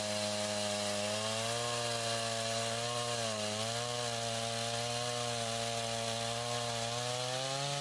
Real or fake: real